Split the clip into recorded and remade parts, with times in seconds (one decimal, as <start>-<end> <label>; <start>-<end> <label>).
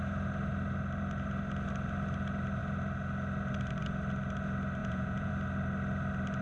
0.0-4.8 recorded; 4.8-5.3 remade; 5.3-6.4 recorded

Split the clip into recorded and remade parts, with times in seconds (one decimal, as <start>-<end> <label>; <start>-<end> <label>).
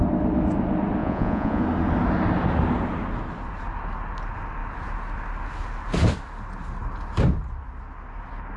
0.0-1.0 recorded; 1.0-1.6 remade; 1.6-8.6 recorded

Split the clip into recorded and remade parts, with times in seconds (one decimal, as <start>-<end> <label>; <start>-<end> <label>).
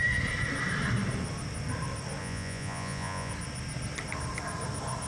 0.0-2.2 recorded; 2.2-3.3 remade; 3.3-5.1 recorded